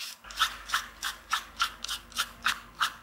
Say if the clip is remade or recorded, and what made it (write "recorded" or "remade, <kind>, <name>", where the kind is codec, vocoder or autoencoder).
remade, codec, DAC